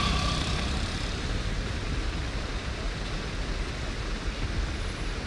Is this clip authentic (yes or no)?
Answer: yes